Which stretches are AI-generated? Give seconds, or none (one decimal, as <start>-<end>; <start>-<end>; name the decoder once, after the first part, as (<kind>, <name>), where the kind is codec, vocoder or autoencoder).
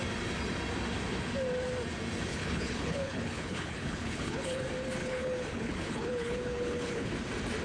2.3-4.6 (codec, HILCodec); 5.0-7.1